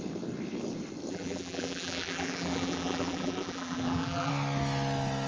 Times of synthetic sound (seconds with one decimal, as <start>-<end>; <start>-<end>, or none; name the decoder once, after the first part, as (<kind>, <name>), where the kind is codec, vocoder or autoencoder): 1.1-4.3 (vocoder, BigVGAN v2)